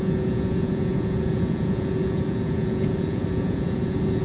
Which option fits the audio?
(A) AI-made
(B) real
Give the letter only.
A